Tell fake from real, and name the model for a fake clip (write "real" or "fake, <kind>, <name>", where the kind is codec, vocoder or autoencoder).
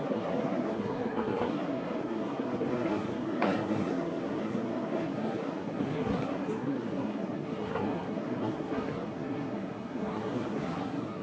fake, codec, SNAC